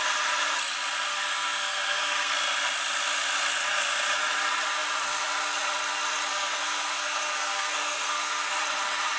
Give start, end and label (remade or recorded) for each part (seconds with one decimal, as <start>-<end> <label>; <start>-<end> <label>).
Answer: 0.0-1.1 recorded; 1.1-2.3 remade; 2.3-6.3 recorded; 6.3-8.6 remade; 8.6-9.2 recorded